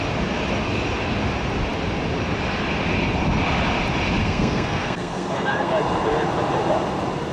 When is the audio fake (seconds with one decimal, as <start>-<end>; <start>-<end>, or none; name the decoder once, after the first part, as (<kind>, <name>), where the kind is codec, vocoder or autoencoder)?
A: 4.2-5.7 (codec, SNAC)